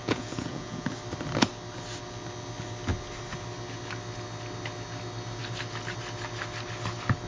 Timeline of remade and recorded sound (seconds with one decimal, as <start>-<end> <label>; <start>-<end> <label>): 0.0-0.9 remade; 0.9-7.3 recorded